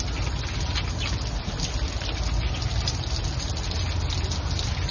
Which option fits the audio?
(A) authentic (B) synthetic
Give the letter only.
A